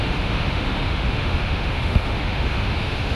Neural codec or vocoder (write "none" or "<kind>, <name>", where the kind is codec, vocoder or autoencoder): autoencoder, DAC-VAE